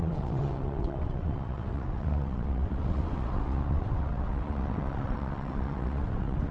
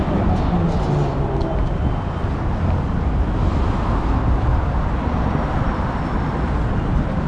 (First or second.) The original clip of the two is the second